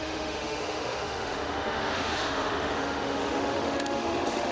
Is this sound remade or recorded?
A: remade